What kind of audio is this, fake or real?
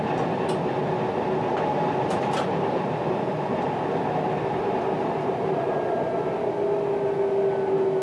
real